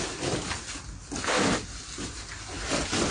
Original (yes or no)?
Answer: yes